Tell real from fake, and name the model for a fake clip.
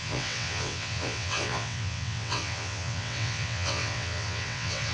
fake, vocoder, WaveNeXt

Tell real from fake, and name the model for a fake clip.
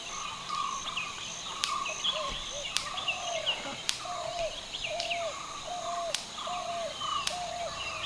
real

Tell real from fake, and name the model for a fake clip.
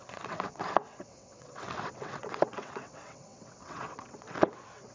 fake, vocoder, WaveNeXt